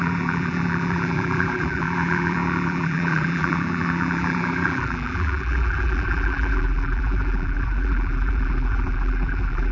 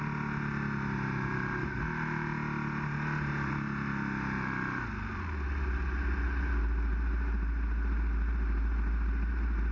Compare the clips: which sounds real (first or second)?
second